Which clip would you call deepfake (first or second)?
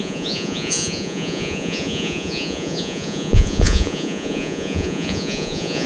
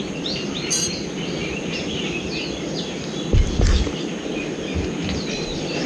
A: first